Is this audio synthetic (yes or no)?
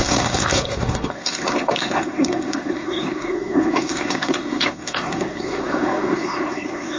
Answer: yes